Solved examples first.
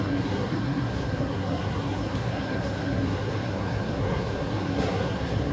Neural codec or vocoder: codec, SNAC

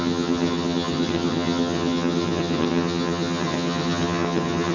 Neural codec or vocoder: vocoder, HiFi-GAN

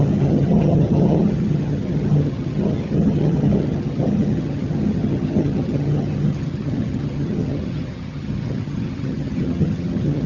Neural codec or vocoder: vocoder, HiFi-GAN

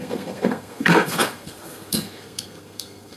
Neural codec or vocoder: codec, SNAC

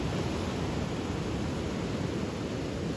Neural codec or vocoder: none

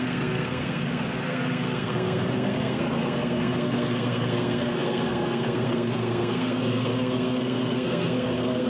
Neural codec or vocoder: codec, SNAC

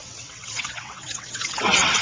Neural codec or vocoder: vocoder, WaveNeXt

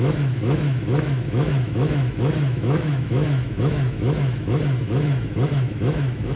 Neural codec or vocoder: autoencoder, DAC-VAE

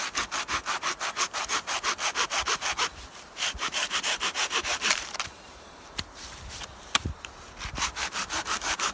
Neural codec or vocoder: vocoder, BigVGAN v2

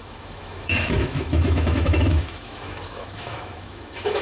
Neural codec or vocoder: autoencoder, DAC-VAE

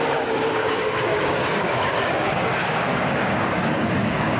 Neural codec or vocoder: codec, DAC